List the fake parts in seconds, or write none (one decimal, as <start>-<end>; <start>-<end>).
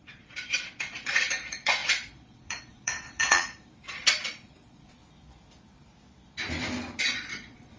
0.0-5.0; 7.0-7.8